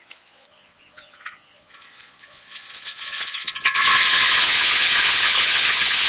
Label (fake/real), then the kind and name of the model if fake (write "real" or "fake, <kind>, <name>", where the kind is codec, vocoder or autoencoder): fake, vocoder, Vocos